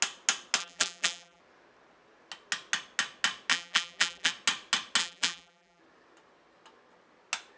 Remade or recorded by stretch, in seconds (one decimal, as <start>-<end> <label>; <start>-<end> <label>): 0.0-0.6 recorded; 0.6-1.4 remade; 1.4-3.5 recorded; 3.5-4.3 remade; 4.3-5.0 recorded; 5.0-5.8 remade; 5.8-7.6 recorded